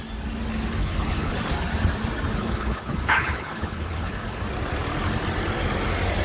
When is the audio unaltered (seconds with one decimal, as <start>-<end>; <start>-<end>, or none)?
0.0-0.8; 1.3-2.4; 4.4-6.2